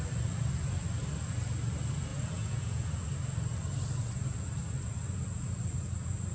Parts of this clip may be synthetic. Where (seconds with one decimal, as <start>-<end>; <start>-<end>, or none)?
2.1-2.9